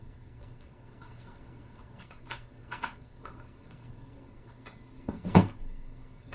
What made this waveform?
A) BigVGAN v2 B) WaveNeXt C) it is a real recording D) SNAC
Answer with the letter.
D